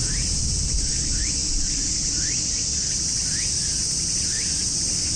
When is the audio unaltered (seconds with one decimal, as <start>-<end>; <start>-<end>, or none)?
0.0-5.2